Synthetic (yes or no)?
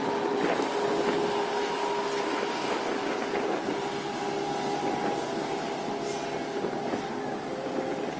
no